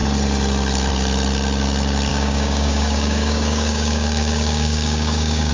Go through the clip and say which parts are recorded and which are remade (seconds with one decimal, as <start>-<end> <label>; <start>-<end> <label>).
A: 0.0-2.1 recorded; 2.1-5.5 remade